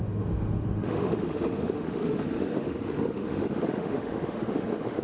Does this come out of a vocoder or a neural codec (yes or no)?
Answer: yes